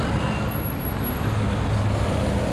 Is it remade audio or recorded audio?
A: recorded